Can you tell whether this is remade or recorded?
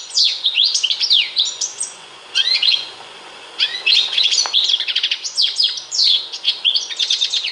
remade